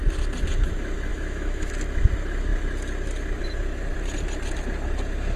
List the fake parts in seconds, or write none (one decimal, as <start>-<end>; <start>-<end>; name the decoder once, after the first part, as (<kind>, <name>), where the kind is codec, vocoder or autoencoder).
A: 1.1-1.7 (autoencoder, DAC-VAE)